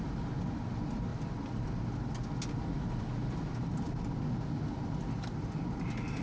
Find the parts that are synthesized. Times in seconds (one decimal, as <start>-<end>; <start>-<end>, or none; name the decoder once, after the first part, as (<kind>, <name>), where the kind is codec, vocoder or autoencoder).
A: none